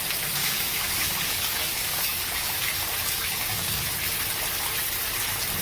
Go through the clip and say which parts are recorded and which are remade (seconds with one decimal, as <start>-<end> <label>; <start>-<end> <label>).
0.0-0.4 recorded; 0.4-3.8 remade; 3.8-5.6 recorded